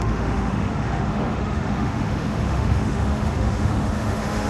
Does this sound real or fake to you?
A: fake